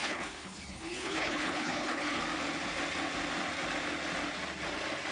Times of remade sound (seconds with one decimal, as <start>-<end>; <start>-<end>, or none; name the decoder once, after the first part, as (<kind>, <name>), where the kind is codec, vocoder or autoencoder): 0.0-2.2 (codec, HILCodec)